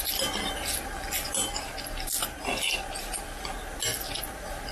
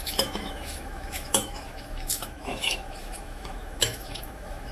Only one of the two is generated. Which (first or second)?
second